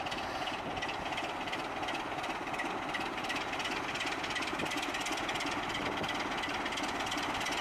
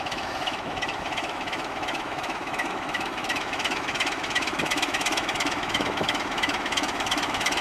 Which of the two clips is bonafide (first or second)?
first